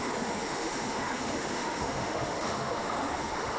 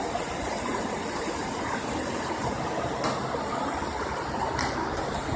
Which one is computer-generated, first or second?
first